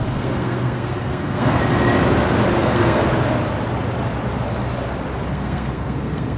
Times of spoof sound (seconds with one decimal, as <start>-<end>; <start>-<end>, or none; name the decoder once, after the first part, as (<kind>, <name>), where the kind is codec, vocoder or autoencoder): 0.0-1.6 (codec, SNAC); 2.6-3.0; 5.3-6.4